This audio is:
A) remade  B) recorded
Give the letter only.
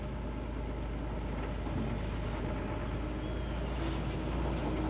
B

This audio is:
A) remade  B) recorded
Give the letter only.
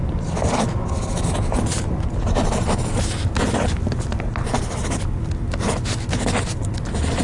B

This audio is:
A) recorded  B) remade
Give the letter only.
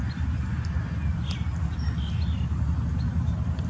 A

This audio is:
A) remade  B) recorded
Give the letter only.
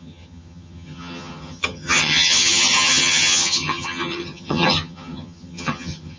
A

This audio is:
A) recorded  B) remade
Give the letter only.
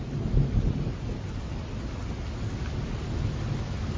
A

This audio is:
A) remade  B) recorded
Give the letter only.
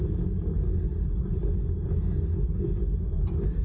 B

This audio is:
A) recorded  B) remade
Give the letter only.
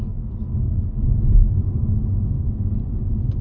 A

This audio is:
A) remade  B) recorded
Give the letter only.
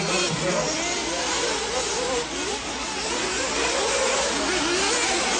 B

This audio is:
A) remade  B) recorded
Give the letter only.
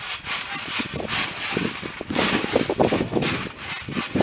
B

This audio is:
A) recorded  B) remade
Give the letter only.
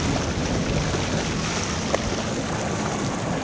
A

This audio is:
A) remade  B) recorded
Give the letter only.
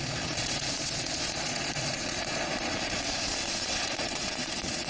A